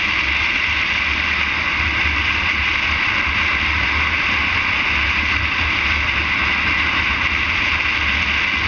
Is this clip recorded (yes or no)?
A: yes